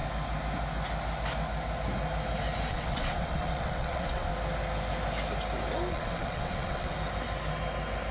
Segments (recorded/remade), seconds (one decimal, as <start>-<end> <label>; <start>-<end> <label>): 0.0-2.7 recorded; 2.7-4.3 remade; 4.3-5.9 recorded; 5.9-6.9 remade; 6.9-8.1 recorded